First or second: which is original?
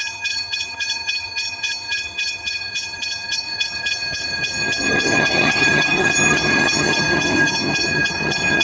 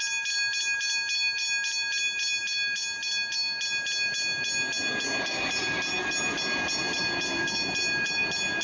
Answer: second